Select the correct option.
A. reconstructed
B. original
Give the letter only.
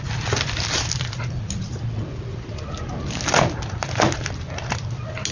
B